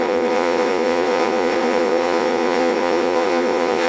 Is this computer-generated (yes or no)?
yes